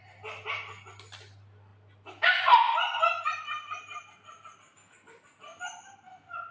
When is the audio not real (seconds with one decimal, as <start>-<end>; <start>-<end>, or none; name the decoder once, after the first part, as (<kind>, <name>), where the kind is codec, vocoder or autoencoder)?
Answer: none